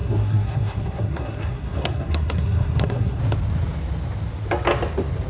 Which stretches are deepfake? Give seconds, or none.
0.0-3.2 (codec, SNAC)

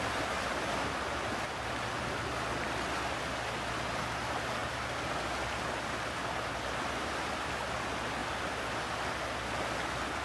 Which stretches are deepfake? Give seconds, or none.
none

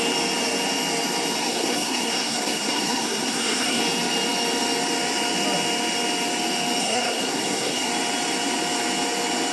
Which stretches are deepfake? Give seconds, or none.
1.4-3.8 (codec, SNAC); 6.8-7.9

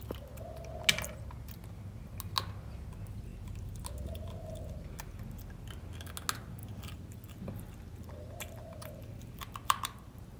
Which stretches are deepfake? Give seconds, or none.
3.3-3.8 (vocoder, BigVGAN v2); 6.6-10.4

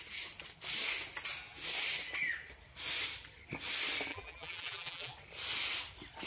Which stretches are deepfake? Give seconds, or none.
4.1-5.1 (vocoder, BigVGAN v2)

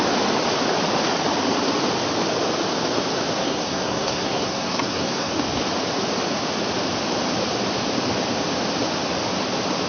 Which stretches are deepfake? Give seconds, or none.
3.4-5.3 (codec, SNAC)